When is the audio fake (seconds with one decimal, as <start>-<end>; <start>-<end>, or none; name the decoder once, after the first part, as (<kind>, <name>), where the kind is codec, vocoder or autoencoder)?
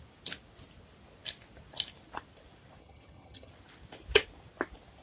2.8-3.5 (vocoder, HiFi-GAN)